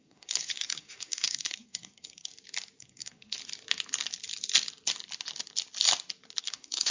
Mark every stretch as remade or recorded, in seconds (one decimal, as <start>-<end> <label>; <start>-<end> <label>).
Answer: 0.0-2.3 remade; 2.3-2.8 recorded; 2.8-3.4 remade; 3.4-6.4 recorded; 6.4-6.9 remade